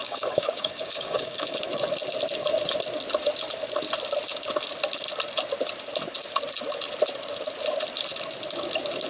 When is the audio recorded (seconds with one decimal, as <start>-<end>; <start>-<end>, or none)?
1.6-9.1